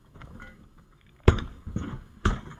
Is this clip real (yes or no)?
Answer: no